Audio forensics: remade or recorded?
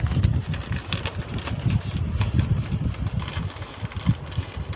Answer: recorded